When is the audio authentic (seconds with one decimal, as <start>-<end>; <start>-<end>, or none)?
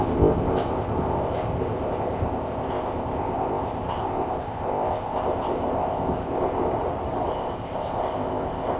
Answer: 6.7-7.3